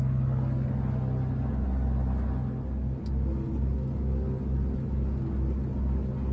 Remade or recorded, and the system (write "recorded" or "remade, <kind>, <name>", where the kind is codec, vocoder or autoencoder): recorded